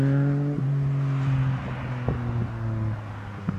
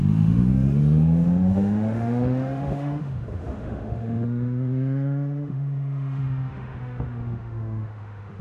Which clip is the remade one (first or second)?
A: second